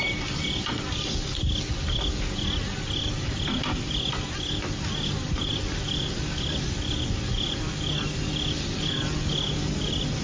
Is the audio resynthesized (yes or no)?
no